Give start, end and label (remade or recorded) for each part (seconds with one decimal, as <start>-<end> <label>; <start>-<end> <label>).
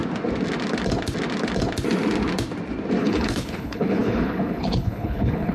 0.0-3.0 recorded; 3.0-5.5 remade